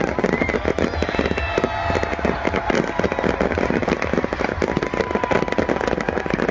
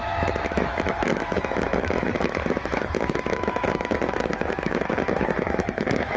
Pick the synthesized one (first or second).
second